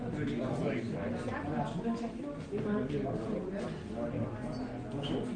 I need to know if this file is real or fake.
real